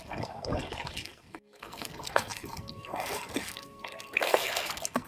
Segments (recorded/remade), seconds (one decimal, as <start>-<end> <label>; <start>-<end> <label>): 0.0-5.1 remade